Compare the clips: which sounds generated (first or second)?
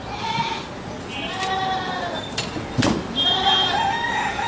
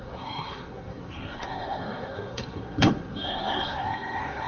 second